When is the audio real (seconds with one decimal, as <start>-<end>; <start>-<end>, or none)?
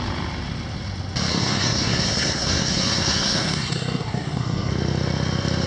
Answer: 0.0-1.3; 4.7-5.7